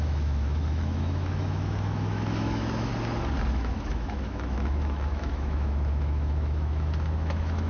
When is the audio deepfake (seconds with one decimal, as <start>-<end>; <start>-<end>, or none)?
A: 0.0-2.9; 3.5-7.7